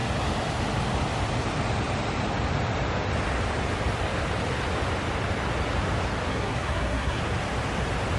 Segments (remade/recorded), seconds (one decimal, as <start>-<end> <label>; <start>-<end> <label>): 0.0-6.3 recorded; 6.3-7.2 remade; 7.2-8.2 recorded